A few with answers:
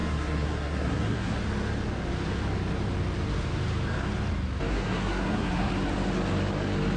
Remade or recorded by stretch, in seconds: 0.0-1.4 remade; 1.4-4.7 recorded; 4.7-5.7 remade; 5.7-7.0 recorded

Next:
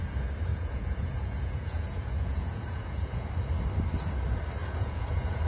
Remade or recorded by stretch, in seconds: 0.0-0.5 recorded; 0.5-3.3 remade; 3.3-4.6 recorded; 4.6-5.5 remade

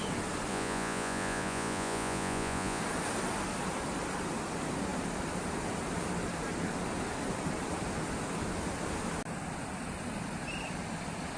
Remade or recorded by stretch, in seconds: 0.0-0.5 recorded; 0.5-2.8 remade; 2.8-11.4 recorded